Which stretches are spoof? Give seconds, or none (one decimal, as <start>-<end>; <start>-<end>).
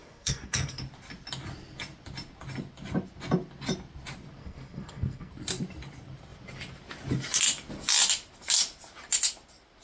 0.0-0.8; 4.4-5.3